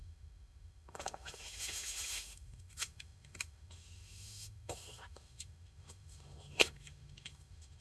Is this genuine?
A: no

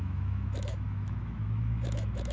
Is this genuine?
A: no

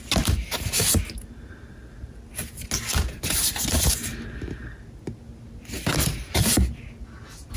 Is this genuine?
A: yes